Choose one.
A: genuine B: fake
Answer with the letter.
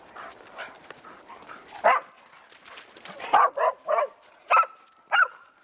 A